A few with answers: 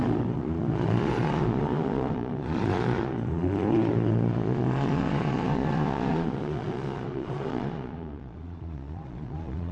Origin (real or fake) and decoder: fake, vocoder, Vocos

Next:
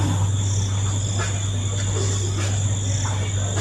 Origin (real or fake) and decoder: real